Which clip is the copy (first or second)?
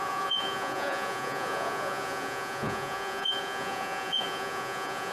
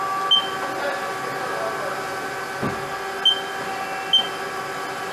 first